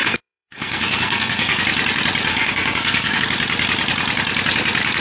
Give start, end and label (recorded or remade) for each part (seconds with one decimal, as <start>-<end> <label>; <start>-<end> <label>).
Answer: 0.0-1.6 remade; 1.6-2.3 recorded; 2.3-3.2 remade; 3.2-5.0 recorded

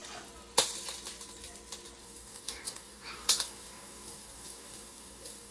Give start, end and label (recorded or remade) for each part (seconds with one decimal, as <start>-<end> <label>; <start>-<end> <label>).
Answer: 0.0-2.0 recorded; 2.0-5.5 remade

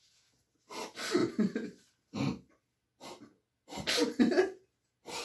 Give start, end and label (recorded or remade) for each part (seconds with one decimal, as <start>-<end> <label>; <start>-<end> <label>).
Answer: 0.0-5.2 recorded

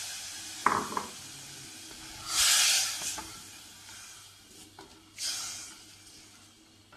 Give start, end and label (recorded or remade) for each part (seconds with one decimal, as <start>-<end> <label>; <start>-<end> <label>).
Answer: 0.0-7.0 recorded

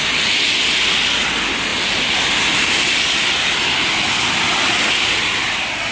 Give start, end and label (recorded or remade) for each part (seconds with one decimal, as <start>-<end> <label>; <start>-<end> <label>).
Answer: 0.0-1.7 recorded; 1.7-2.4 remade; 2.4-5.9 recorded

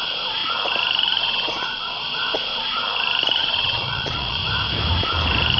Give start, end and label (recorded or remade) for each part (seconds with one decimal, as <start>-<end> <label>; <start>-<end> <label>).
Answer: 0.0-0.4 remade; 0.4-1.2 recorded; 1.2-2.8 remade; 2.8-3.4 recorded; 3.4-4.4 remade; 4.4-5.6 recorded

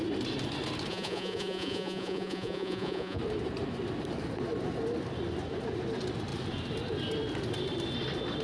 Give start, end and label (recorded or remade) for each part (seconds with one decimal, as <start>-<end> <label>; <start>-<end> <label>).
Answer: 0.0-0.9 recorded; 0.9-3.2 remade; 3.2-8.4 recorded